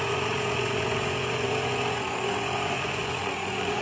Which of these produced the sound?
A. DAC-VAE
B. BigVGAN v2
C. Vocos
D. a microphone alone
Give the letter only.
C